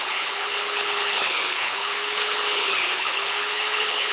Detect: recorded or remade remade